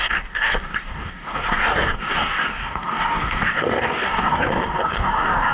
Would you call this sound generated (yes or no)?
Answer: yes